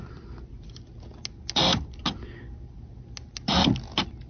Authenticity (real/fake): real